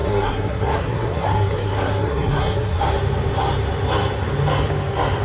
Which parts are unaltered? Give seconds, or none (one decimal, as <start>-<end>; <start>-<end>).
2.8-5.2